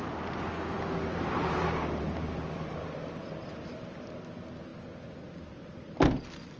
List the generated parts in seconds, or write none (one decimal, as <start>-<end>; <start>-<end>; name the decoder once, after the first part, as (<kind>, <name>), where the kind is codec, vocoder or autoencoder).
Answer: 1.1-2.9 (vocoder, BigVGAN v2)